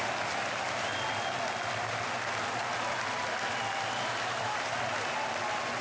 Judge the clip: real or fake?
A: real